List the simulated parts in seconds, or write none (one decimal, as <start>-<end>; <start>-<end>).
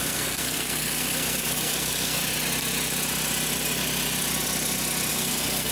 0.0-2.2; 5.1-5.7